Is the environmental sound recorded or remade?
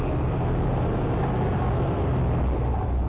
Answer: recorded